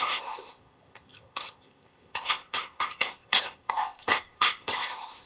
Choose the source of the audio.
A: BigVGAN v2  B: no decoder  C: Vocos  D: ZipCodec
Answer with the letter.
D